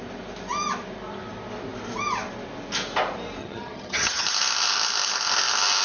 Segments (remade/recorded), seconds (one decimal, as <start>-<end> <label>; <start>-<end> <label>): 0.0-3.4 recorded; 3.4-4.2 remade; 4.2-5.8 recorded